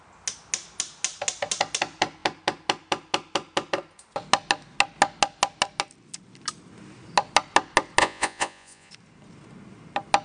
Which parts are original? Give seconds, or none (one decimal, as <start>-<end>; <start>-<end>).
0.0-8.0; 8.9-10.2